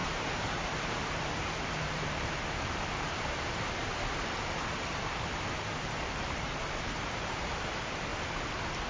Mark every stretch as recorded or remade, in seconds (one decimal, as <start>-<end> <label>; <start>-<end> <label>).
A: 0.0-8.1 remade; 8.1-8.9 recorded